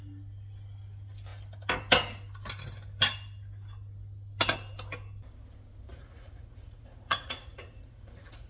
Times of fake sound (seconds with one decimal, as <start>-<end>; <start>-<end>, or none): 5.9-8.5

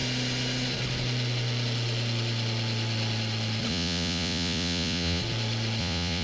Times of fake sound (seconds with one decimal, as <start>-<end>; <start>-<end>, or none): 3.7-5.2; 5.8-6.2

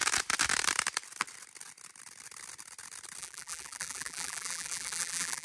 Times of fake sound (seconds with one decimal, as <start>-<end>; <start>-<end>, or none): 3.2-5.4

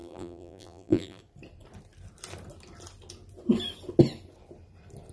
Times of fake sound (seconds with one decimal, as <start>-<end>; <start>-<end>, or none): 0.0-1.2

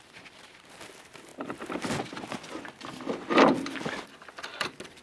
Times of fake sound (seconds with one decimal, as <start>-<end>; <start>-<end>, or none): none

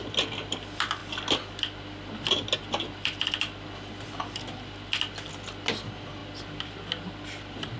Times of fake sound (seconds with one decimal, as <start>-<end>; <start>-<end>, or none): none

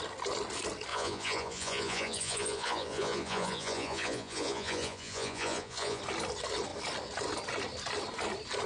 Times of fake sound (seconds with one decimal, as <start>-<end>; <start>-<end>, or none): 0.9-6.0